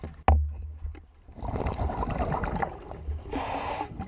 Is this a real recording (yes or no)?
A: yes